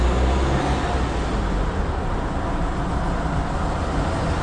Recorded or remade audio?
recorded